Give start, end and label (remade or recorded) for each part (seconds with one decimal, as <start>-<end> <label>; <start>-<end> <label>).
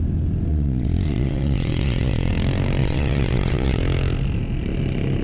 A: 0.0-0.5 recorded; 0.5-2.3 remade; 2.3-2.8 recorded; 2.8-3.8 remade; 3.8-5.2 recorded